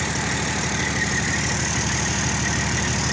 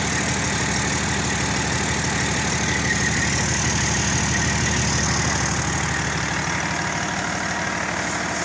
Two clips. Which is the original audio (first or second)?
second